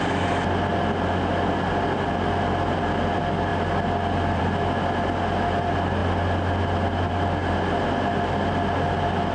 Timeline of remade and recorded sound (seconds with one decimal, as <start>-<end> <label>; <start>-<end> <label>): 0.0-9.3 recorded